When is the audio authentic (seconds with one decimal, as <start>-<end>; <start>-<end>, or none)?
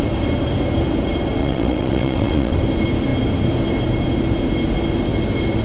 0.0-1.4; 2.6-5.6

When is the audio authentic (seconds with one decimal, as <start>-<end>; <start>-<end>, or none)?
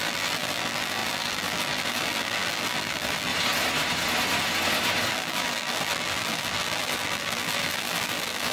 3.3-5.1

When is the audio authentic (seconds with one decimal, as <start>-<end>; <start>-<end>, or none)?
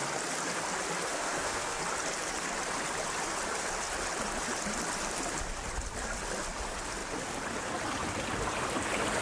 0.0-1.1; 1.8-9.2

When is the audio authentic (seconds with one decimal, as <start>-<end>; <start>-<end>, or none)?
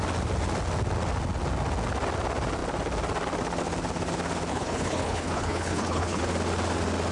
0.0-4.5; 6.2-7.1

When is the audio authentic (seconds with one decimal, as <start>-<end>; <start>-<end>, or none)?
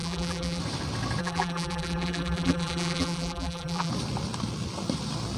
0.6-1.2; 3.9-5.4